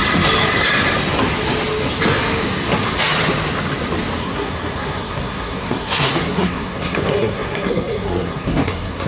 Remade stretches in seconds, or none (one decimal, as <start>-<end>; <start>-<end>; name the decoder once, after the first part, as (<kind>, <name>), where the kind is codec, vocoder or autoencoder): 4.2-9.1 (codec, SNAC)